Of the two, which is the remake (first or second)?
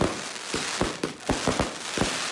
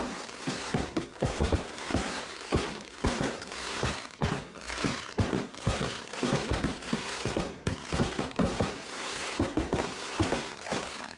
second